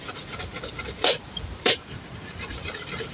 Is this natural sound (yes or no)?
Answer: no